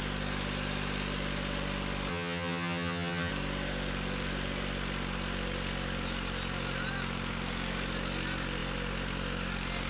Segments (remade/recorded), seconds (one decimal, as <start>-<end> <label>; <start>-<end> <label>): 0.0-2.1 recorded; 2.1-3.3 remade; 3.3-9.9 recorded